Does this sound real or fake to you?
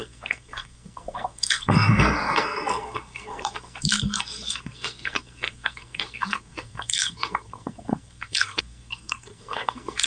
fake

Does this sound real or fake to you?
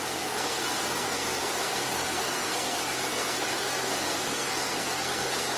fake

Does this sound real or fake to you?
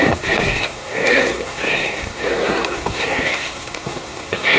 fake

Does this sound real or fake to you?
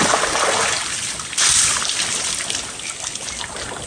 real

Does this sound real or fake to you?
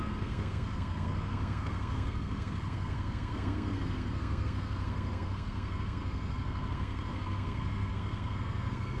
fake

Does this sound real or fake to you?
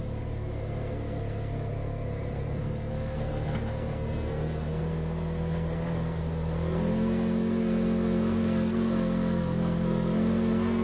fake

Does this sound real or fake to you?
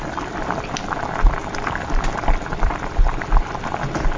real